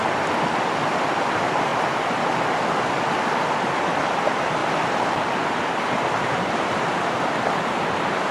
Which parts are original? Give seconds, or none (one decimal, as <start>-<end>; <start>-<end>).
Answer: none